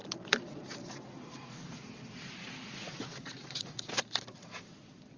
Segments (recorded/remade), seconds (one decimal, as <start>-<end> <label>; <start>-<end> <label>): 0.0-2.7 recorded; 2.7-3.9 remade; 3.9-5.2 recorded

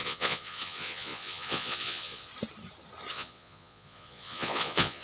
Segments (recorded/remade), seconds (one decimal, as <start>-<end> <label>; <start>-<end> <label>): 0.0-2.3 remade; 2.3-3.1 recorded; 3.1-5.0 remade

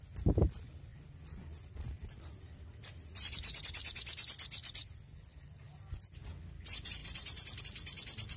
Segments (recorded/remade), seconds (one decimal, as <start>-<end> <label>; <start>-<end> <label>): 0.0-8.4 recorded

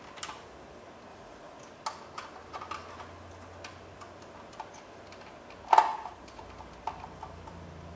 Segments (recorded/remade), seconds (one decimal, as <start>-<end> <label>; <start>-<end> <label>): 0.0-1.1 recorded; 1.1-1.6 remade; 1.6-5.9 recorded; 5.9-6.4 remade; 6.4-8.0 recorded